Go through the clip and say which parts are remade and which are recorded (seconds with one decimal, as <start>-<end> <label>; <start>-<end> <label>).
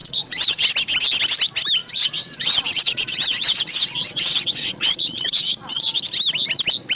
0.0-0.7 remade; 0.7-1.8 recorded; 1.8-6.0 remade; 6.0-7.0 recorded